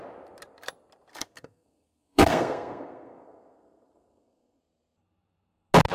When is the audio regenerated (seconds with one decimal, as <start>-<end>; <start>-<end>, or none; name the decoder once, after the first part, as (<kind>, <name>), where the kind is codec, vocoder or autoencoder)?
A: 1.1-4.6 (codec, SNAC)

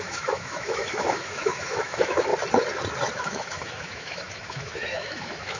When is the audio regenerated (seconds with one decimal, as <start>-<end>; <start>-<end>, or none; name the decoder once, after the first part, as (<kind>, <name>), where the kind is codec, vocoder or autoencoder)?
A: 0.0-2.3 (autoencoder, DAC-VAE); 3.1-5.6

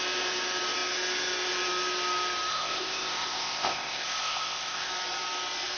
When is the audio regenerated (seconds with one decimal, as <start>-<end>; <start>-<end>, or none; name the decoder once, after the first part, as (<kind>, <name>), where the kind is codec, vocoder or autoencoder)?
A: 2.5-4.9 (codec, ZipCodec)

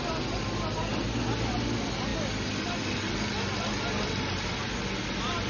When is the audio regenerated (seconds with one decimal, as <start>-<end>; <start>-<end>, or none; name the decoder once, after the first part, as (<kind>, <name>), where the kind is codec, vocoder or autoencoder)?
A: none

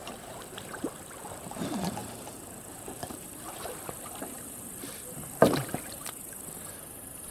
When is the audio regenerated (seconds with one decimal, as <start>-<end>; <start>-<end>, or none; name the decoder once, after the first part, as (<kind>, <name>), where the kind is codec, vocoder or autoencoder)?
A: 0.0-7.3 (vocoder, BigVGAN v2)

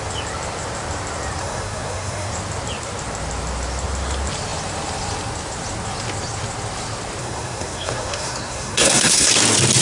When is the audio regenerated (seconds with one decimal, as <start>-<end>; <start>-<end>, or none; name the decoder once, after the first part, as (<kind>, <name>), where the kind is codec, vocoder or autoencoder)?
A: 1.4-2.3 (codec, SNAC); 7.2-9.3